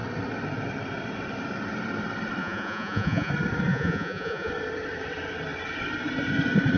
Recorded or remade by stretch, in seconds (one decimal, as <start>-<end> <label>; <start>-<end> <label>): 0.0-2.4 recorded; 2.4-3.3 remade; 3.3-3.7 recorded; 3.7-4.5 remade; 4.5-6.8 recorded